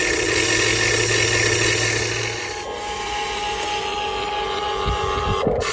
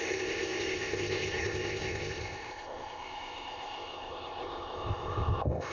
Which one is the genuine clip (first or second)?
first